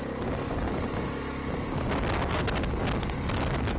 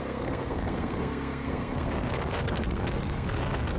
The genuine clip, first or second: first